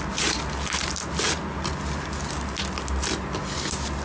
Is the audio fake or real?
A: real